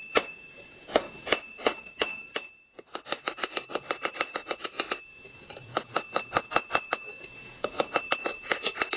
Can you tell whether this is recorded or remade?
remade